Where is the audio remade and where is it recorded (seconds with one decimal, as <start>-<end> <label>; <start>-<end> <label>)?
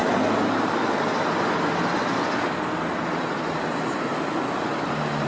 0.0-3.2 remade; 3.2-5.3 recorded